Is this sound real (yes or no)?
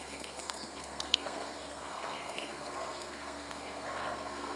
no